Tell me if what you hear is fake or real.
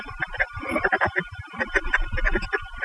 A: real